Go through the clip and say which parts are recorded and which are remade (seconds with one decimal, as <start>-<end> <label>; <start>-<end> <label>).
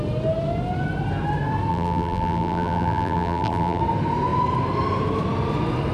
0.0-1.7 recorded; 1.7-3.8 remade; 3.8-5.9 recorded